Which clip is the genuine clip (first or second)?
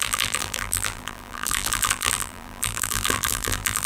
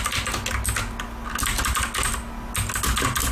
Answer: second